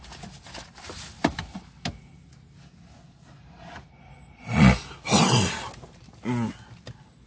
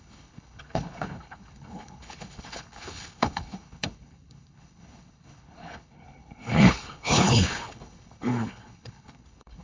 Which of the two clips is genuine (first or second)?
first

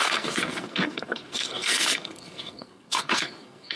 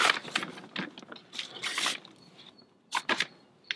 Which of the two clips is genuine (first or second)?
second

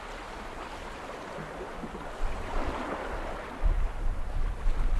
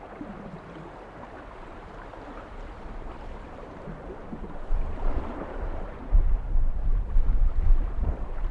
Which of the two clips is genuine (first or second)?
first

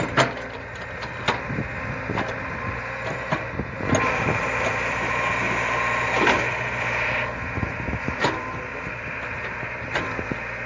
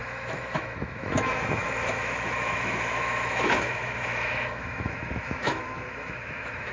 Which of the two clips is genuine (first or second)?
first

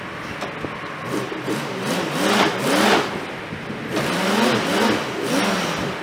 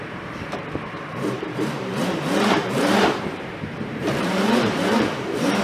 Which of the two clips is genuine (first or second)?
first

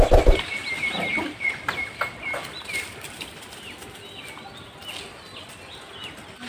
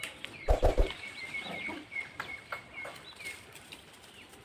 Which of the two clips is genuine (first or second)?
first